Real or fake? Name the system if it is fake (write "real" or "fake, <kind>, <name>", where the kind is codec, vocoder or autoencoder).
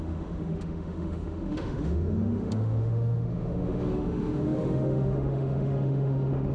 fake, autoencoder, DAC-VAE